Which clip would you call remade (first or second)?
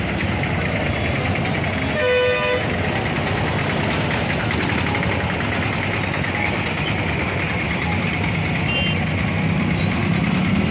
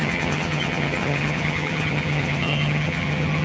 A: second